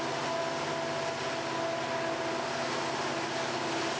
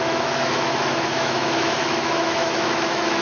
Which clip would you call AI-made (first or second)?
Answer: second